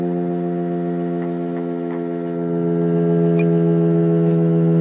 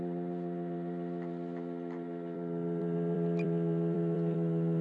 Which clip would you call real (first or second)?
first